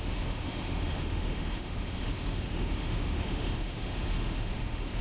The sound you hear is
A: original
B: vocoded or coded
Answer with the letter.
B